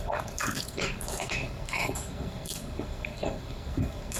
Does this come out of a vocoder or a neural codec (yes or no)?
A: yes